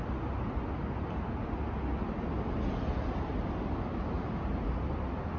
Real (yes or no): yes